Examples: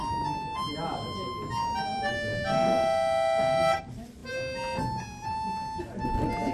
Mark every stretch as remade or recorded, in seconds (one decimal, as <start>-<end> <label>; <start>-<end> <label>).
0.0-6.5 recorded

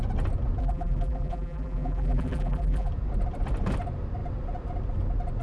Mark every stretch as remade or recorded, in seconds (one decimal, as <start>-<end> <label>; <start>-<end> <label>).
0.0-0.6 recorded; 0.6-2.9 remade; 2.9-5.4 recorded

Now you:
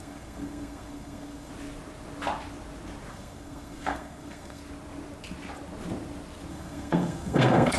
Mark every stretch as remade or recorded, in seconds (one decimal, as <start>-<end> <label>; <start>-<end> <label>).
0.0-1.5 remade; 1.5-3.1 recorded; 3.1-4.6 remade; 4.6-6.5 recorded; 6.5-7.8 remade

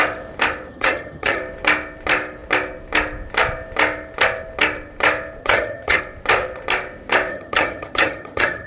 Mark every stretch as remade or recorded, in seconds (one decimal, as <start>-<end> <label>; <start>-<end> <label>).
0.0-0.7 recorded; 0.7-1.4 remade; 1.4-5.4 recorded; 5.4-6.0 remade; 6.0-7.3 recorded; 7.3-8.7 remade

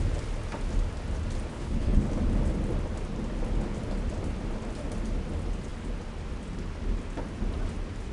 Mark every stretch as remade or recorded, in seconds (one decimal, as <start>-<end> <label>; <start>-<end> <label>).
0.0-1.5 recorded; 1.5-2.0 remade; 2.0-8.1 recorded

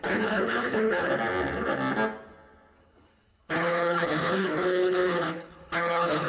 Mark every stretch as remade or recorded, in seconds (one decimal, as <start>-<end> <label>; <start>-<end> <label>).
0.0-1.1 remade; 1.1-2.8 recorded; 2.8-6.3 remade